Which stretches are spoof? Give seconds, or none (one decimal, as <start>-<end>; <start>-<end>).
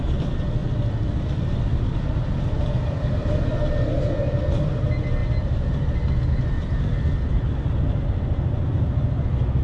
0.6-4.8